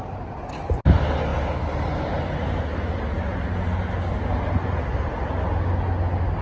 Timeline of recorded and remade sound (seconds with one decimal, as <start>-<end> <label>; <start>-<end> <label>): 0.0-6.4 recorded